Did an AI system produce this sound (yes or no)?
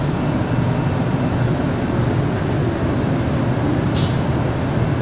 no